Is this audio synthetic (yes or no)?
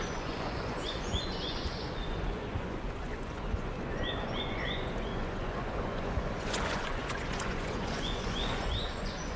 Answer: yes